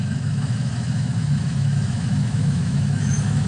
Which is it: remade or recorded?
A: remade